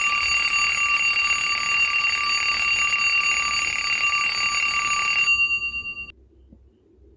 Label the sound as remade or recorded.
recorded